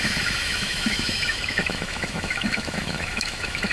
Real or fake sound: fake